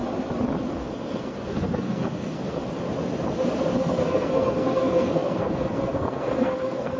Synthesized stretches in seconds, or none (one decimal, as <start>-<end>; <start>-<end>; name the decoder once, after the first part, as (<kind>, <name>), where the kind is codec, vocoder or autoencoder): 0.7-2.6 (codec, SNAC); 3.8-7.0